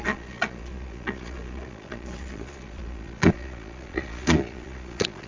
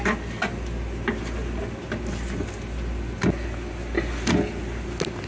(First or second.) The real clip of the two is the second